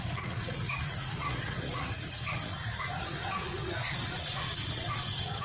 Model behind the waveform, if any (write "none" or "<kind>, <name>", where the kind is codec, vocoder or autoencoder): vocoder, Vocos